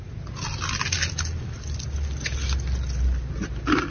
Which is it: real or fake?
real